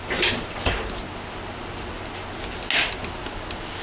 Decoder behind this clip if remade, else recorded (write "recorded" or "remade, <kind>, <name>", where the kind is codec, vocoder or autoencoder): recorded